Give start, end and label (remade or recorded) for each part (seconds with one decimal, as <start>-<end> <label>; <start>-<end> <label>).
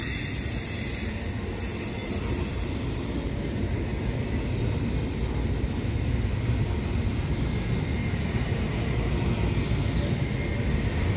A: 0.0-2.0 recorded; 2.0-4.0 remade; 4.0-11.2 recorded